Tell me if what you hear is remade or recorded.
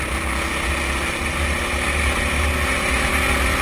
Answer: recorded